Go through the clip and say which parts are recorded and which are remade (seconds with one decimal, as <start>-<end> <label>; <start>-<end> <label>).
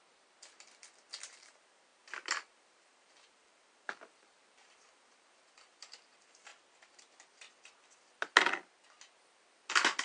0.0-1.3 recorded; 1.3-6.5 remade; 6.5-10.0 recorded